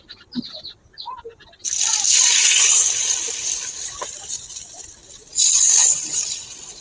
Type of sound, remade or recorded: recorded